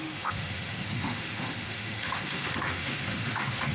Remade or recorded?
remade